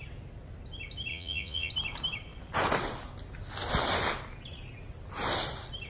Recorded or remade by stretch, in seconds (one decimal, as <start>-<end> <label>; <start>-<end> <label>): 0.0-1.1 recorded; 1.1-1.7 remade; 1.7-5.9 recorded